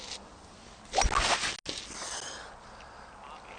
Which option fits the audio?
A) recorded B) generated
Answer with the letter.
A